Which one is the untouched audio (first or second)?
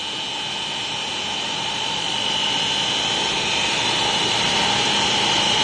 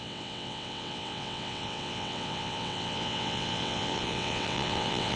first